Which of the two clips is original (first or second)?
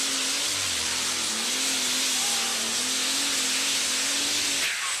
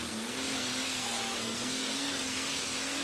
first